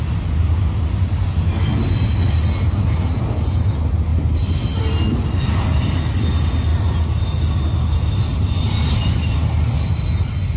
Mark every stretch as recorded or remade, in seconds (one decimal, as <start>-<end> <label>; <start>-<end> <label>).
0.0-10.6 recorded

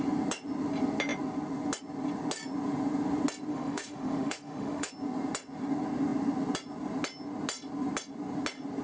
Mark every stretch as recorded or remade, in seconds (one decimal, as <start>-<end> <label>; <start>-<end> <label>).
0.0-3.5 recorded; 3.5-4.9 remade; 4.9-8.8 recorded

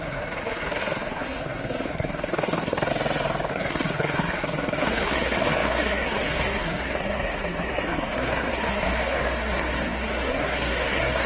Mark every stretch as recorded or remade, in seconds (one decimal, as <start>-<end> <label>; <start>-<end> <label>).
0.0-2.9 remade; 2.9-3.5 recorded; 3.5-11.3 remade

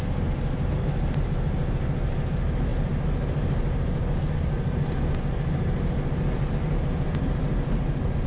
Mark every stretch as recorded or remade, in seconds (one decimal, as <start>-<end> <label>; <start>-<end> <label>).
0.0-8.3 recorded

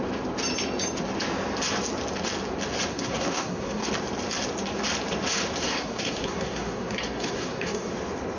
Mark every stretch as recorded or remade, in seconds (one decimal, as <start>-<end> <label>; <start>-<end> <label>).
0.0-2.9 recorded; 2.9-3.9 remade; 3.9-5.6 recorded; 5.6-7.9 remade; 7.9-8.4 recorded